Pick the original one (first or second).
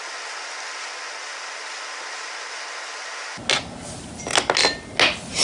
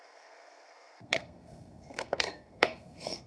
first